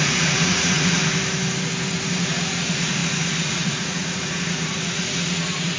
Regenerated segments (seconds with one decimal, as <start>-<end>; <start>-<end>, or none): 0.0-1.0; 2.2-5.8